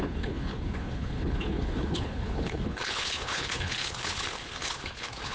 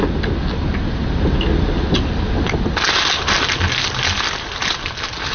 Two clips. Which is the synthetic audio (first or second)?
first